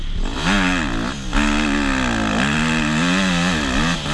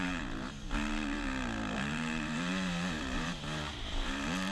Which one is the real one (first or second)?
first